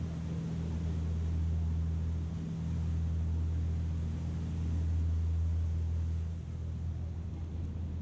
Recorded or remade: recorded